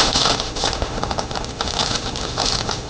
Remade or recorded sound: remade